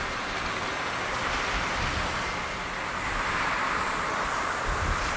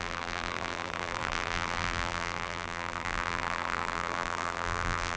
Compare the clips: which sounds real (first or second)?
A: first